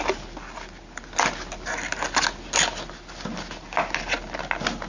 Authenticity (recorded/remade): recorded